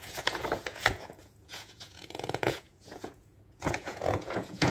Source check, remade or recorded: remade